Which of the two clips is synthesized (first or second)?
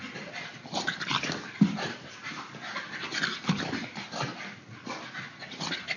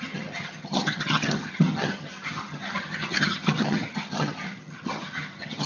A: second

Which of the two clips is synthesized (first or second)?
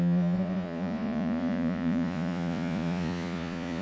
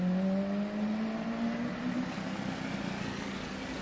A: first